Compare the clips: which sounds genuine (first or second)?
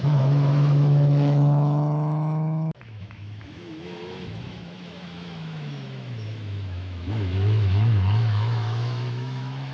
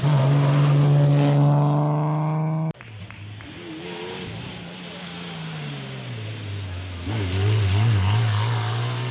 second